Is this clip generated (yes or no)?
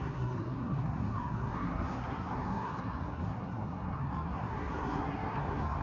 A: yes